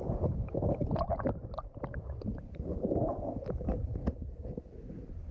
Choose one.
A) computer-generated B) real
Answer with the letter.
B